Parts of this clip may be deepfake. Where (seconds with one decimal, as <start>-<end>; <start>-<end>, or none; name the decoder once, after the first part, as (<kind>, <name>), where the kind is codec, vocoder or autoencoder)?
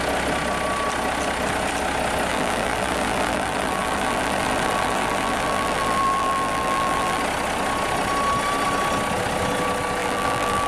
2.3-7.2 (vocoder, BigVGAN v2); 10.0-10.7